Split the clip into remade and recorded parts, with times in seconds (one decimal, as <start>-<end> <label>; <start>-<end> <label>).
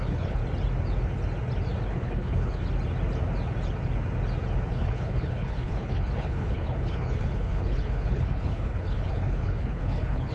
0.0-0.4 remade; 0.4-1.9 recorded; 1.9-2.6 remade; 2.6-4.7 recorded; 4.7-10.3 remade